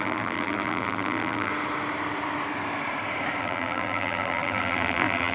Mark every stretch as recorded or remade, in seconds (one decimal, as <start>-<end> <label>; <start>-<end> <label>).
0.0-1.5 remade; 1.5-3.4 recorded; 3.4-5.3 remade